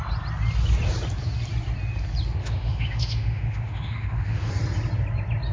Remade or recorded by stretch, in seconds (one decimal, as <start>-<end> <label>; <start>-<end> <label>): 0.0-2.4 recorded; 2.4-4.5 remade; 4.5-5.5 recorded